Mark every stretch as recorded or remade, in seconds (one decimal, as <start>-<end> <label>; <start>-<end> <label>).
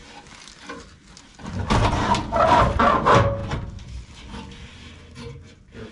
0.0-5.9 recorded